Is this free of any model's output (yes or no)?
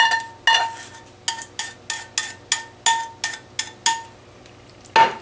yes